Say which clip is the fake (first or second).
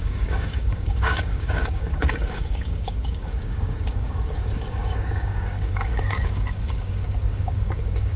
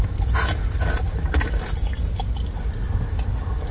first